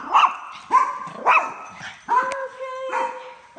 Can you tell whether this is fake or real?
real